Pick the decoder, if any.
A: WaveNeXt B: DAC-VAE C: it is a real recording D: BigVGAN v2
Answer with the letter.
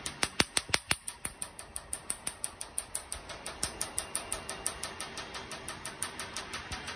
C